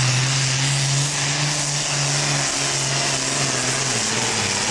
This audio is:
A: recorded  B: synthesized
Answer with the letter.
A